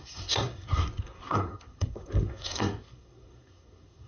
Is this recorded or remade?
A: remade